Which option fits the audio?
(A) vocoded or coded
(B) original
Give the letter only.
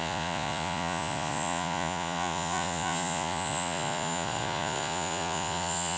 A